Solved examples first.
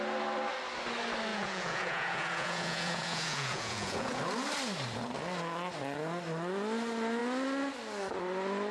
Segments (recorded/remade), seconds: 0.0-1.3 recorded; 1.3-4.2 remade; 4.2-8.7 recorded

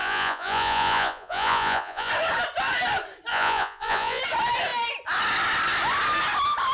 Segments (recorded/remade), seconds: 0.0-2.1 remade; 2.1-3.3 recorded; 3.3-4.2 remade; 4.2-6.7 recorded

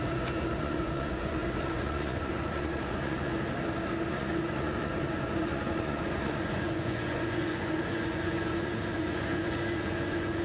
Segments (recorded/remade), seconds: 0.0-3.3 remade; 3.3-4.1 recorded; 4.1-10.4 remade

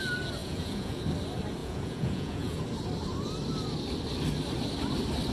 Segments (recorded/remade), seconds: 0.0-0.4 recorded; 0.4-1.0 remade; 1.0-1.6 recorded; 1.6-2.6 remade; 2.6-5.3 recorded

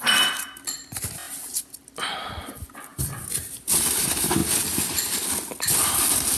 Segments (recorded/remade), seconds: 0.0-6.4 recorded